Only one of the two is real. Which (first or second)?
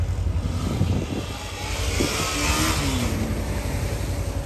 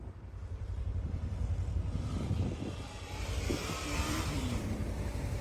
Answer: first